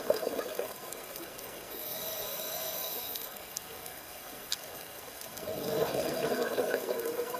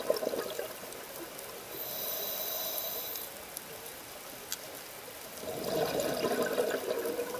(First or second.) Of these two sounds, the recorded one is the second